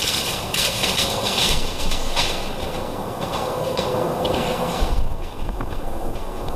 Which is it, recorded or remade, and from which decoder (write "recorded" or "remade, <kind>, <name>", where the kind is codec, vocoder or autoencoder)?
remade, codec, SNAC